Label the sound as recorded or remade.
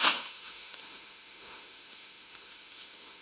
remade